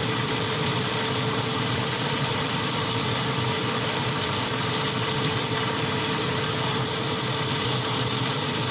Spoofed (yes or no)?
yes